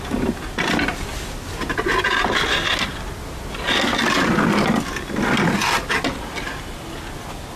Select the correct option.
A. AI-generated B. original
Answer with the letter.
B